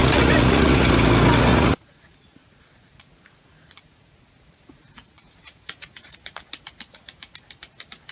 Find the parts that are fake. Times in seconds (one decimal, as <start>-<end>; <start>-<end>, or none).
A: 0.0-0.9; 1.5-6.4